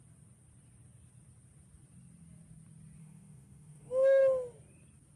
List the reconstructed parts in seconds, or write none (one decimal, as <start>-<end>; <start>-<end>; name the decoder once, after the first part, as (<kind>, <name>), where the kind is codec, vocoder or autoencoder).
3.0-4.2 (autoencoder, DAC-VAE)